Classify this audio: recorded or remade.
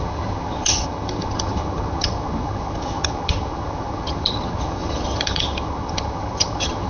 remade